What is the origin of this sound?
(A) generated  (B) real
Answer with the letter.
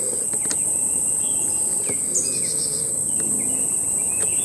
B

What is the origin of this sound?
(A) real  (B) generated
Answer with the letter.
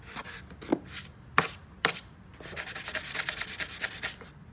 A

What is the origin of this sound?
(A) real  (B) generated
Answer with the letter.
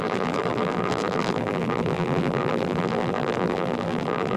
B